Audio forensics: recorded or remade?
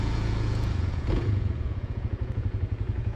remade